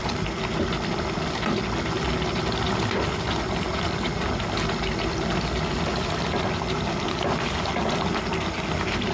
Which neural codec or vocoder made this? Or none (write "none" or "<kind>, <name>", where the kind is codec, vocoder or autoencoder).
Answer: none